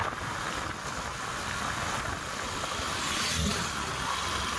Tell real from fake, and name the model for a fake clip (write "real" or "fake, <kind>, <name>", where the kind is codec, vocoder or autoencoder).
real